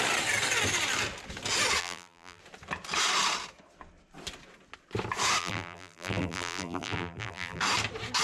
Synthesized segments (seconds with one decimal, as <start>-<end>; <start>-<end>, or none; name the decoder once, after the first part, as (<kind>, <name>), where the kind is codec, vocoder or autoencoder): 1.8-2.4 (vocoder, BigVGAN v2); 5.4-7.6